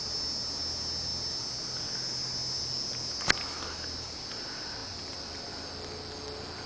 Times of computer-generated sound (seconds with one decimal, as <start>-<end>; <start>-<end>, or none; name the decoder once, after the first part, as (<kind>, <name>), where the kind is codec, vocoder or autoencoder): none